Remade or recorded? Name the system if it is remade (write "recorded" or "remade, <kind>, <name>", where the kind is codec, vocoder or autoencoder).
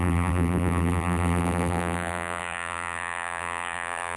remade, vocoder, BigVGAN v2